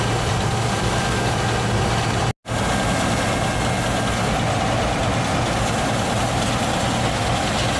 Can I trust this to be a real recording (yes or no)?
yes